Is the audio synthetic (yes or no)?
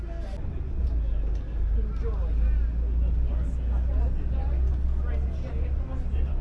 no